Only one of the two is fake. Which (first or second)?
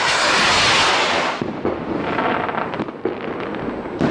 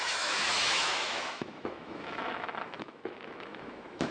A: second